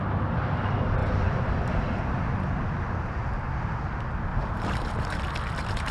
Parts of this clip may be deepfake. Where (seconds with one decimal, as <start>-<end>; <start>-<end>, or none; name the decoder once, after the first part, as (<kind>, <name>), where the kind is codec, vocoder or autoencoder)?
1.0-2.0 (vocoder, BigVGAN v2); 4.3-5.2